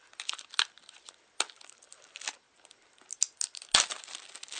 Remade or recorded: recorded